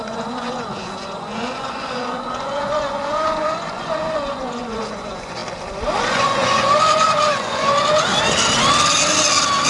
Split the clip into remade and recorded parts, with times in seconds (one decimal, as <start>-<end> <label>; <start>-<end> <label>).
0.0-5.4 remade; 5.4-6.0 recorded; 6.0-8.1 remade; 8.1-9.7 recorded